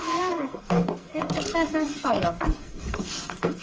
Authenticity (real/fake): fake